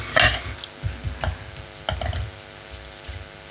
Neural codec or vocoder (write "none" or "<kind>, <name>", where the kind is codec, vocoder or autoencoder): none